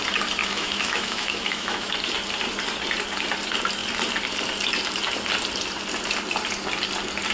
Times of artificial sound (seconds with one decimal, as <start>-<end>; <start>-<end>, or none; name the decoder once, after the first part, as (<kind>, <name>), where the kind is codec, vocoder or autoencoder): 0.4-1.9 (autoencoder, DAC-VAE)